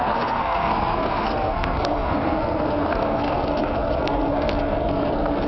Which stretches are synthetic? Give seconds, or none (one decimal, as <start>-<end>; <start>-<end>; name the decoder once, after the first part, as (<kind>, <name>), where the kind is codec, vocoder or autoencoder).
0.0-5.5 (codec, SNAC)